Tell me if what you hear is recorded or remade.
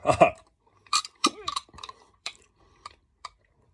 remade